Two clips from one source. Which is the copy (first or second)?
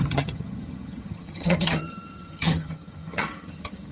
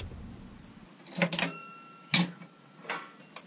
first